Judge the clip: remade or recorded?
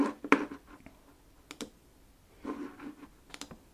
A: recorded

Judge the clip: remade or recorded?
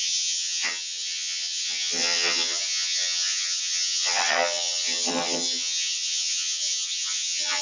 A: remade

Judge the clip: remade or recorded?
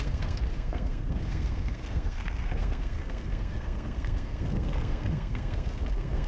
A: remade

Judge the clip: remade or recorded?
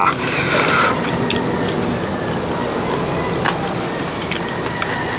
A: recorded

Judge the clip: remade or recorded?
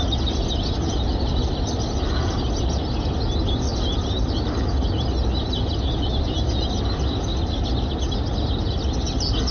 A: recorded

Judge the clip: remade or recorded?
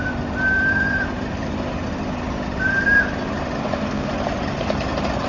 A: recorded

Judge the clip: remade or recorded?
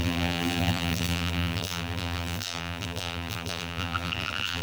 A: remade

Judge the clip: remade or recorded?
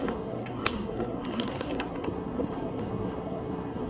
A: remade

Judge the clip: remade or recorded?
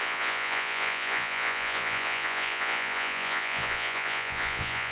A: remade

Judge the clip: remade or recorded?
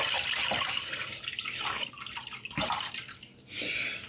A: recorded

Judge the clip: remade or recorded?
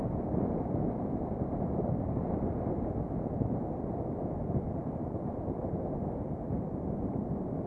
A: remade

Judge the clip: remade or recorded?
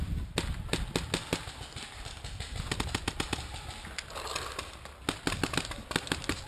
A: recorded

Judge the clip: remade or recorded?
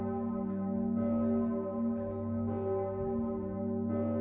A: recorded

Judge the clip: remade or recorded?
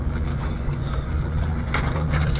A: remade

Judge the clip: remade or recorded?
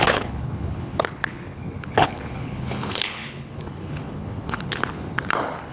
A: remade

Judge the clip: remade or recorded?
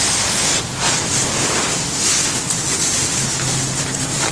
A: recorded